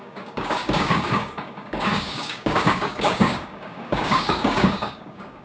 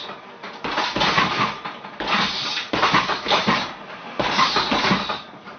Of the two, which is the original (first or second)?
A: second